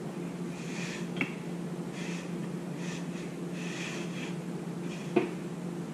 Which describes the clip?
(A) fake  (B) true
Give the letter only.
B